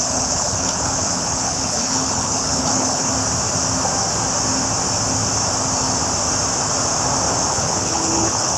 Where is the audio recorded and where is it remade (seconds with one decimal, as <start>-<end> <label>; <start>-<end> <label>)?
0.0-3.1 remade; 3.1-7.5 recorded; 7.5-8.6 remade